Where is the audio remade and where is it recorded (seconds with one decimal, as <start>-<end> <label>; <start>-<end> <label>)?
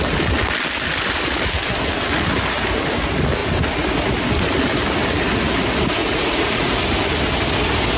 0.0-6.1 recorded; 6.1-6.7 remade; 6.7-8.0 recorded